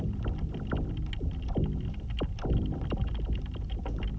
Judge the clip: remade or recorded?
recorded